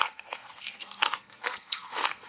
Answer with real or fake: fake